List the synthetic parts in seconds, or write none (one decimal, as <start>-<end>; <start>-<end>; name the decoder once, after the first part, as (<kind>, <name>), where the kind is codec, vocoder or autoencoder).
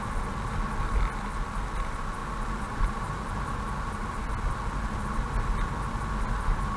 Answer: none